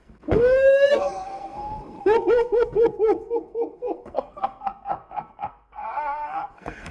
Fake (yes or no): yes